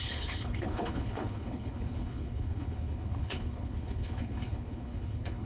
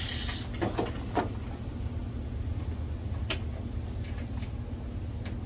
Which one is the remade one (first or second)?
first